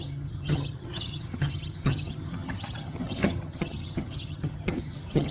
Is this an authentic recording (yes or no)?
no